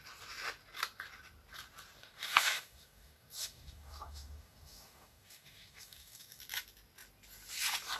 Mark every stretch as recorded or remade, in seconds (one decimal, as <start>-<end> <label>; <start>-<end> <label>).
0.0-2.0 recorded; 2.0-6.4 remade; 6.4-8.0 recorded